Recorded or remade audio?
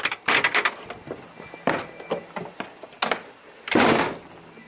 recorded